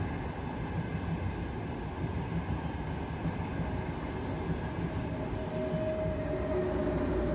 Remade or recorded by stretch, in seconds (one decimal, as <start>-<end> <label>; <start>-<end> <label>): 0.0-7.3 recorded

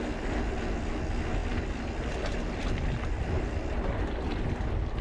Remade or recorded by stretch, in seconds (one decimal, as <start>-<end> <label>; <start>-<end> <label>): 0.0-5.0 recorded

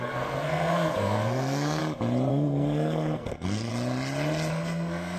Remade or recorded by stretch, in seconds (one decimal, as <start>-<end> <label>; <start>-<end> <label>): 0.0-1.8 remade; 1.8-2.3 recorded; 2.3-3.7 remade; 3.7-4.5 recorded; 4.5-5.2 remade

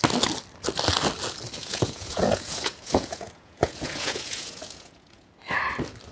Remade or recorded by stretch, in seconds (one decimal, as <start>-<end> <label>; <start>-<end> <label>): 0.0-1.6 recorded; 1.6-5.3 remade; 5.3-6.1 recorded

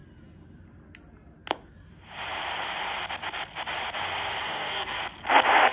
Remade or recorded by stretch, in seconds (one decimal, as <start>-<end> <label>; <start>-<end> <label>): 0.0-4.4 recorded; 4.4-5.0 remade; 5.0-5.7 recorded

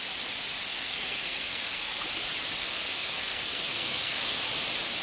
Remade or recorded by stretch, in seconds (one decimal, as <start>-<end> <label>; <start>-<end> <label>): 0.0-0.7 recorded; 0.7-2.0 remade; 2.0-2.6 recorded; 2.6-4.4 remade; 4.4-5.0 recorded